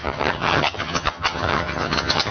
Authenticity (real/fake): fake